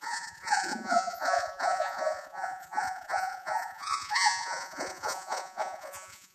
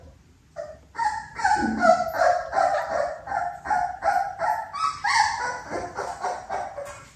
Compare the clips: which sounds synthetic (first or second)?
first